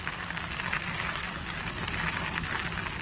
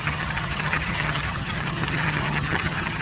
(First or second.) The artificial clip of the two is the second